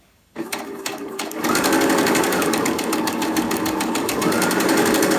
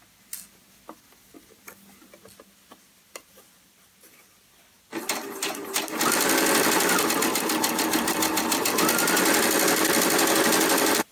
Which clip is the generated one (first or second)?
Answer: first